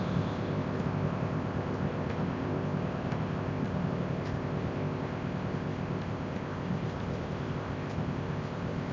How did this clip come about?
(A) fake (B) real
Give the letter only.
A